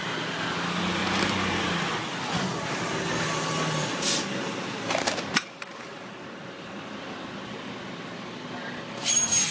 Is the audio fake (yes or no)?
no